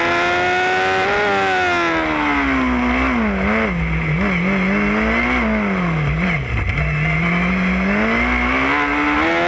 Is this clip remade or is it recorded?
recorded